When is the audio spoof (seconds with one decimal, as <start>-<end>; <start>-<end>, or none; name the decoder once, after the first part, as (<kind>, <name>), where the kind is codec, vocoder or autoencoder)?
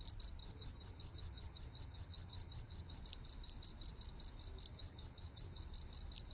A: 0.4-3.0 (vocoder, HiFi-GAN); 4.7-5.6